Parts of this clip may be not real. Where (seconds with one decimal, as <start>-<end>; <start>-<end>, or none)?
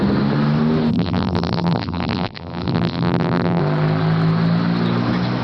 0.9-3.6